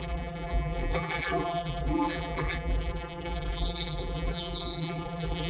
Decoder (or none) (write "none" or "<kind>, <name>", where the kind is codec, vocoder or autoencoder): vocoder, BigVGAN v2